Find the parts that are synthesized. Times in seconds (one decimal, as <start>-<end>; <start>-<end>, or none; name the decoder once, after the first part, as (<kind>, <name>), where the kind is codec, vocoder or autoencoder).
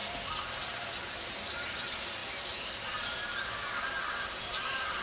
1.2-2.2 (vocoder, BigVGAN v2); 4.4-5.0